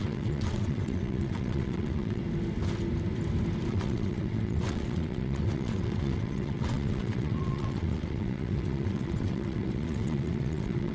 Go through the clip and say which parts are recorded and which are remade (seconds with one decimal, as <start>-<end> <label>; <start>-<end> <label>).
0.0-2.2 remade; 2.2-3.7 recorded; 3.7-10.9 remade